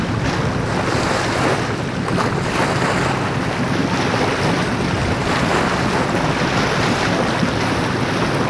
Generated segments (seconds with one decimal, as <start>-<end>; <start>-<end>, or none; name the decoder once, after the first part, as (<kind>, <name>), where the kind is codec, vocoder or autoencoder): none